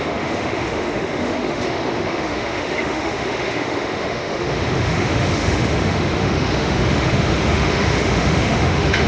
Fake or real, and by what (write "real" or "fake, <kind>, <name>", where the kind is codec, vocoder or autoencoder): fake, autoencoder, DAC-VAE